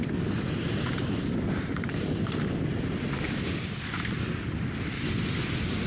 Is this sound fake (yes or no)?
no